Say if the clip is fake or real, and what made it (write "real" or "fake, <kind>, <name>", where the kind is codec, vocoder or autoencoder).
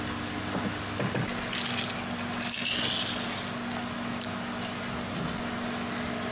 real